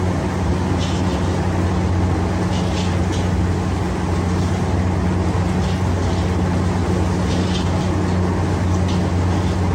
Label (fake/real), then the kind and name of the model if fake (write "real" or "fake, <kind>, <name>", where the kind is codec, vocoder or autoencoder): real